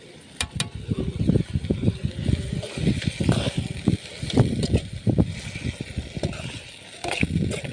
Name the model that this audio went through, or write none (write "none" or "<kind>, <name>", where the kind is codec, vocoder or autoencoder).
none